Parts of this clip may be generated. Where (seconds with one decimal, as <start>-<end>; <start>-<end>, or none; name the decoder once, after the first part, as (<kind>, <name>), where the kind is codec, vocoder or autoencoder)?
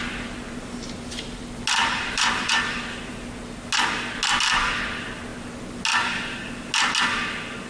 1.8-2.5 (vocoder, BigVGAN v2)